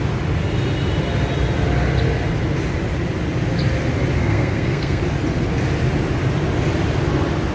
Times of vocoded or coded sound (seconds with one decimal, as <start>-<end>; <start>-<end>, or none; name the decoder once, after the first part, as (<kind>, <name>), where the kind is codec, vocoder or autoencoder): 4.2-5.0 (codec, SNAC)